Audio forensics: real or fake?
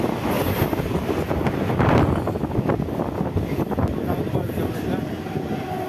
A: real